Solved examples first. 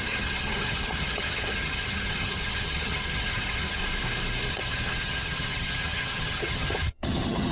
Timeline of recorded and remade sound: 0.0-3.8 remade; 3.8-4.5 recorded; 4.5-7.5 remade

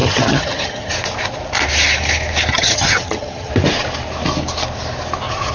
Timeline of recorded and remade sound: 0.0-0.9 remade; 0.9-2.5 recorded; 2.5-3.5 remade; 3.5-5.5 recorded

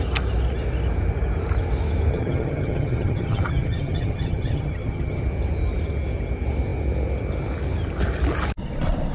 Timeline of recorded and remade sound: 0.0-2.1 recorded; 2.1-5.2 remade; 5.2-9.1 recorded

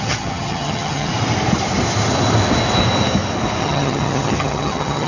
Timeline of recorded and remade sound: 0.0-1.1 remade; 1.1-3.6 recorded; 3.6-5.1 remade